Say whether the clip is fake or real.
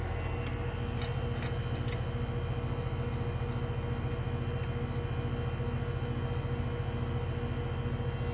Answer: real